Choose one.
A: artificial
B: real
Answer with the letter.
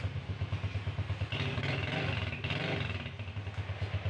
B